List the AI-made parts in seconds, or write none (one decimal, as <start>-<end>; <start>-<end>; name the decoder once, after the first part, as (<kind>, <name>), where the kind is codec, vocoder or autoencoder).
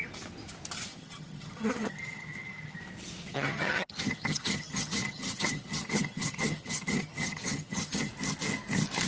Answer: 0.9-2.8 (vocoder, HiFi-GAN); 3.3-8.1